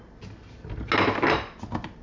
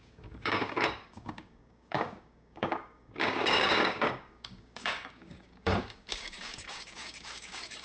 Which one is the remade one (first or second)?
second